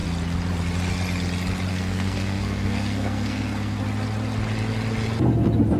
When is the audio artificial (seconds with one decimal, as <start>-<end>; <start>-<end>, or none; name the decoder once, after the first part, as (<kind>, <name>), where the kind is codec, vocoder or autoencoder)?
1.7-3.8 (codec, SNAC)